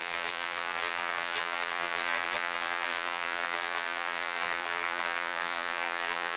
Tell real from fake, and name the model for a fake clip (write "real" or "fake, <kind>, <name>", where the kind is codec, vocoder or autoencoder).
fake, vocoder, BigVGAN v2